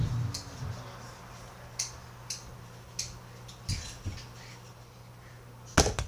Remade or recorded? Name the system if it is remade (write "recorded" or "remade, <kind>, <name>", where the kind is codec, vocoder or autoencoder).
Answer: recorded